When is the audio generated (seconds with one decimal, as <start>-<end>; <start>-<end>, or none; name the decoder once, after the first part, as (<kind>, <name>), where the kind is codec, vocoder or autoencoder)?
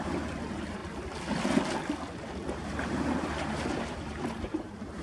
0.0-0.8 (vocoder, BigVGAN v2); 2.5-5.0